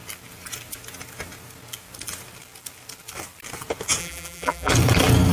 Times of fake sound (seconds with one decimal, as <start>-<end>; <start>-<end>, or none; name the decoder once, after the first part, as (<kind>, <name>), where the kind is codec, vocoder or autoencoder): 4.0-4.7 (vocoder, BigVGAN v2)